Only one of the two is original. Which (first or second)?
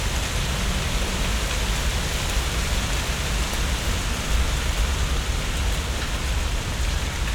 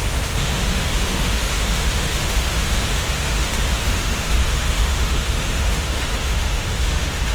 first